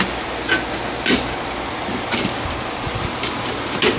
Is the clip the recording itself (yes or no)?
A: yes